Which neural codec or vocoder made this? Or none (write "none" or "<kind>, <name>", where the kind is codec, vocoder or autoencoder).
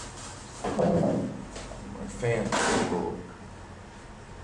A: none